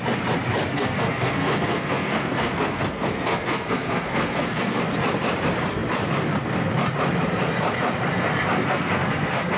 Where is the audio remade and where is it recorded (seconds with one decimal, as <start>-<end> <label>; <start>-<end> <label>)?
0.0-0.7 recorded; 0.7-4.8 remade; 4.8-8.6 recorded; 8.6-9.6 remade